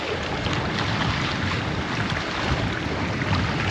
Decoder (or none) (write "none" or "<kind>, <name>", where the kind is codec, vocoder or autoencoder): none